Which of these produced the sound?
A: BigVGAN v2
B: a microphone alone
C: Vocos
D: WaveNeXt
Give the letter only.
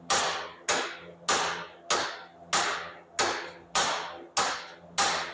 B